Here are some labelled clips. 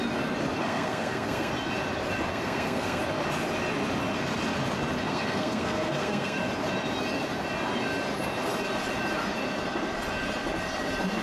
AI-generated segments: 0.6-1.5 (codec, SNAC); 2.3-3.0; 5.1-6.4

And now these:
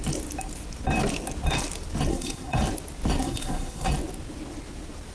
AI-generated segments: 2.1-2.6 (codec, SNAC); 3.2-3.9

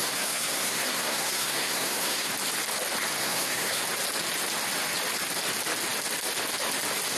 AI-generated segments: 0.0-2.3 (codec, SNAC); 3.2-3.8

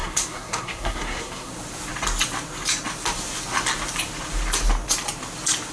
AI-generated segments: 0.0-1.5 (codec, SNAC)

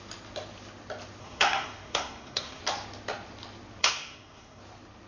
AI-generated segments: 1.2-2.6 (codec, SNAC); 3.8-4.6

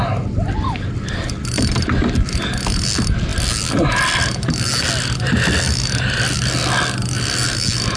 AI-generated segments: none

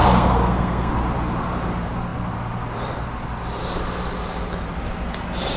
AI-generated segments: 0.0-0.9 (codec, SNAC)